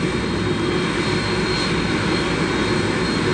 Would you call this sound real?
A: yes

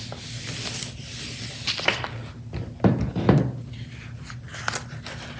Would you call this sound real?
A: yes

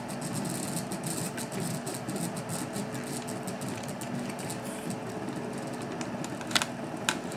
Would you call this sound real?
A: yes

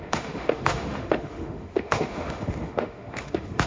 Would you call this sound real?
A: no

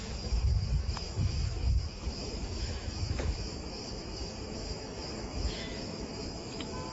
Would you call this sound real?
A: no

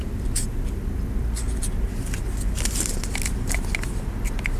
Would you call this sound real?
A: yes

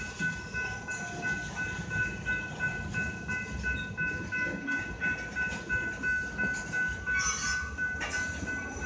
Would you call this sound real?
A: yes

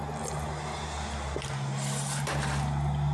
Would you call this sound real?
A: yes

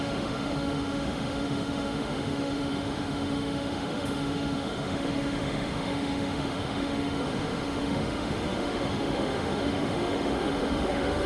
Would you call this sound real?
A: no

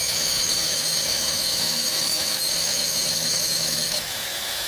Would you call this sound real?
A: no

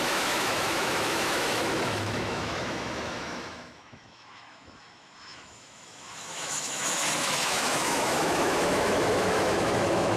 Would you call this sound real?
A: no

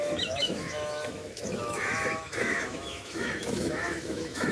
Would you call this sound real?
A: no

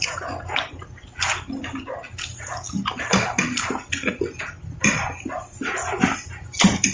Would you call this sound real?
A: yes